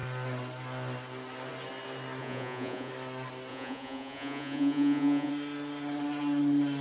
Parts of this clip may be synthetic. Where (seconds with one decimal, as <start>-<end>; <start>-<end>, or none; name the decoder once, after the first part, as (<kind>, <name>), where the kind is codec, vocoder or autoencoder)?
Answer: 2.2-2.9 (vocoder, Vocos); 3.5-5.3

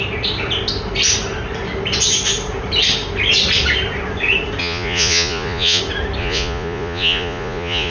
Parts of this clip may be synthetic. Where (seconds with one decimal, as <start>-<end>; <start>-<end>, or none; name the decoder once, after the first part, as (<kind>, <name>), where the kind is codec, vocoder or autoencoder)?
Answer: 4.6-5.8 (vocoder, Vocos); 6.2-7.9